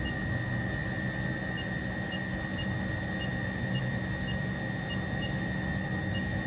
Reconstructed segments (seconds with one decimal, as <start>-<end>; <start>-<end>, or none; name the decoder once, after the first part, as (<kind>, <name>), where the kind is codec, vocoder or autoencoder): none